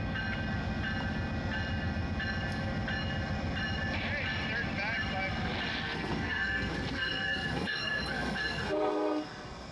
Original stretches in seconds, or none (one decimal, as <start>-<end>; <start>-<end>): 0.0-5.7